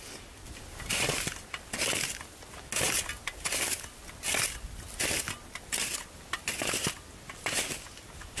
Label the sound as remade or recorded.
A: recorded